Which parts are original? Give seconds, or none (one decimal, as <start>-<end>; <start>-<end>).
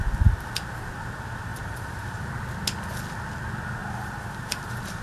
0.0-1.5; 2.3-3.8